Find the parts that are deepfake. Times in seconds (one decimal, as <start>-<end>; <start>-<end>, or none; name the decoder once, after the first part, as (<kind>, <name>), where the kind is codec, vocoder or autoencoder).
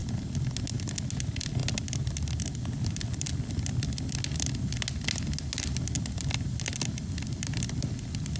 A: 1.6-3.3 (vocoder, BigVGAN v2); 6.7-8.4